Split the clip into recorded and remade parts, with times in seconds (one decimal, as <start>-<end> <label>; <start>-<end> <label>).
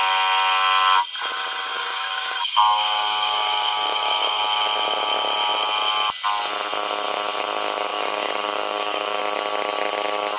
0.0-1.7 recorded; 1.7-4.4 remade; 4.4-7.9 recorded; 7.9-9.2 remade; 9.2-10.4 recorded